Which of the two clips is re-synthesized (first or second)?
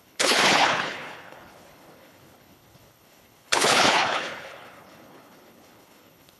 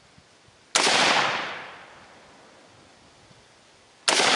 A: first